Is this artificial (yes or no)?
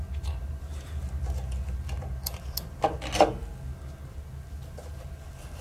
no